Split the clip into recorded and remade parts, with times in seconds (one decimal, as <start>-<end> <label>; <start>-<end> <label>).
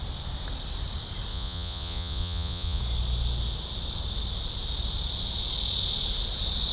0.0-1.3 recorded; 1.3-2.8 remade; 2.8-6.7 recorded